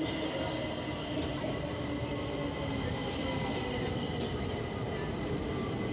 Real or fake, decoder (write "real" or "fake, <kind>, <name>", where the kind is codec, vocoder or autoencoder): real